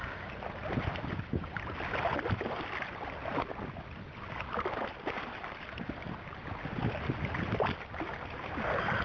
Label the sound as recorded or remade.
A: recorded